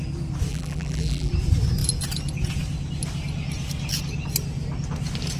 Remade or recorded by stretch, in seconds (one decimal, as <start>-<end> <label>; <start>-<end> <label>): 0.0-0.5 recorded; 0.5-1.3 remade; 1.3-5.4 recorded